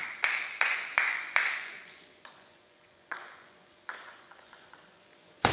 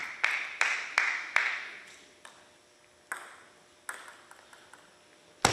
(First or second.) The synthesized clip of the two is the first